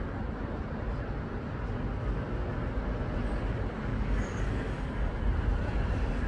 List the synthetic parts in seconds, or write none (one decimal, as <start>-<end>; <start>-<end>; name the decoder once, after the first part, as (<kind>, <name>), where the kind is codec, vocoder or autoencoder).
3.9-5.2 (codec, DAC)